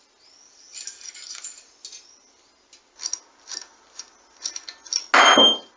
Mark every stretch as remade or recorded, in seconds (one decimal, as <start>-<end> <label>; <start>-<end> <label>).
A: 0.0-5.8 recorded